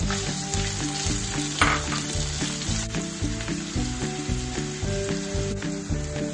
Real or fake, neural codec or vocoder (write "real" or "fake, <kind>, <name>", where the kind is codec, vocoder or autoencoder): real